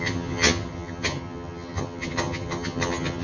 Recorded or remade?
remade